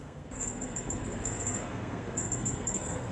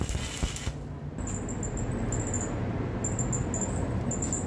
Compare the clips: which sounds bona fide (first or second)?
second